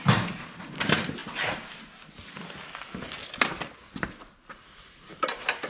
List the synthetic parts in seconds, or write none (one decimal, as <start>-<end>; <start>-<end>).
0.0-1.2; 4.6-5.7